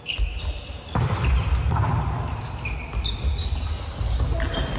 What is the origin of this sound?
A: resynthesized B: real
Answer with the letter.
B